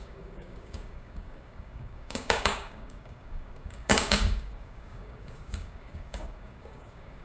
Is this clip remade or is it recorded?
remade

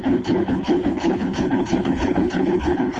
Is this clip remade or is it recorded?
remade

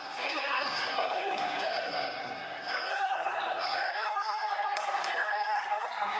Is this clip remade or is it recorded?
remade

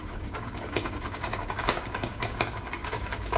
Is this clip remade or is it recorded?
remade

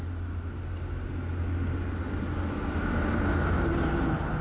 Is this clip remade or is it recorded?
recorded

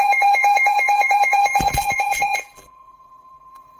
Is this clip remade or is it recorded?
remade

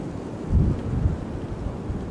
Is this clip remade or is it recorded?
recorded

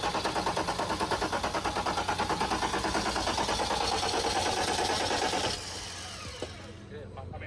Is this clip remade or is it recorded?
recorded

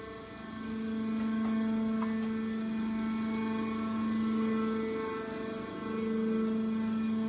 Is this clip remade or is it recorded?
recorded